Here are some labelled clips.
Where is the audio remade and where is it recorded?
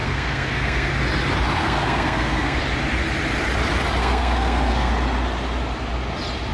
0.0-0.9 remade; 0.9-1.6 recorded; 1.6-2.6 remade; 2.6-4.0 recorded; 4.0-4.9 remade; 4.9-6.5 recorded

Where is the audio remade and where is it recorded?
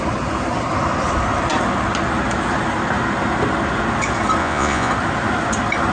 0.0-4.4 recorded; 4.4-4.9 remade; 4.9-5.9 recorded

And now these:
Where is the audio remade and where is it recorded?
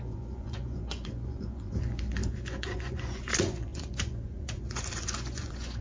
0.0-5.8 remade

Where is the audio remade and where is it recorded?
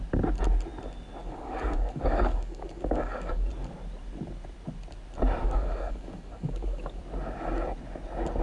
0.0-1.2 recorded; 1.2-3.5 remade; 3.5-5.4 recorded; 5.4-7.0 remade; 7.0-8.4 recorded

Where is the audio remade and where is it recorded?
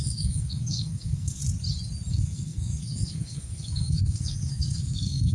0.0-1.4 remade; 1.4-2.1 recorded; 2.1-5.3 remade